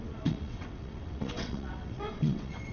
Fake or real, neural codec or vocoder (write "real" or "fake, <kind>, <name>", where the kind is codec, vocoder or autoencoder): fake, vocoder, WaveNeXt